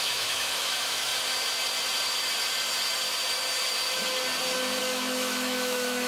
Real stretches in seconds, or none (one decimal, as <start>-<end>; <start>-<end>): 1.1-4.8

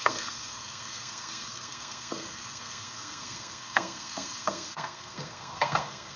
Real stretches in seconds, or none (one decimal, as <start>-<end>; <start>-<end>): none

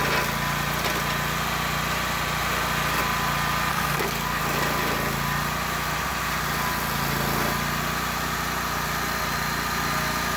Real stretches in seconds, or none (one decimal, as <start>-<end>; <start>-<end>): 0.0-3.7; 4.4-10.4

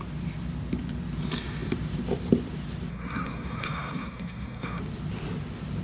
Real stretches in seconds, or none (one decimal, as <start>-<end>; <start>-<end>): 0.0-2.9; 4.8-5.8